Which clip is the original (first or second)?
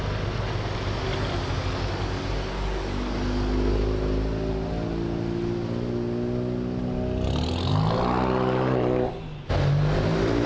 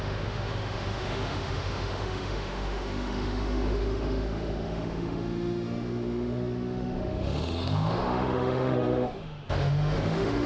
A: first